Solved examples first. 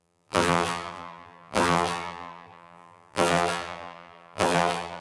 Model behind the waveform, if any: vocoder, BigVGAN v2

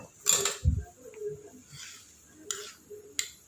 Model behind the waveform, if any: none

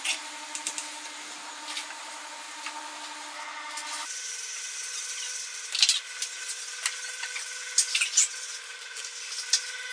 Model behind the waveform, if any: none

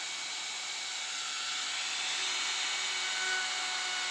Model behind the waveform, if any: none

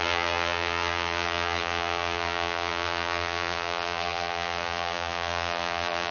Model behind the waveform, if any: vocoder, BigVGAN v2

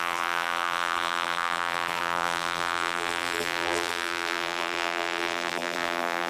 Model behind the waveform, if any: vocoder, BigVGAN v2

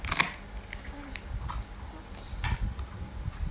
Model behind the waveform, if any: none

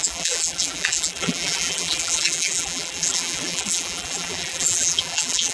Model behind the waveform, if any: vocoder, BigVGAN v2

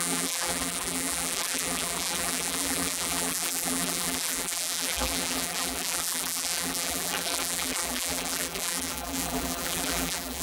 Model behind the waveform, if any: vocoder, BigVGAN v2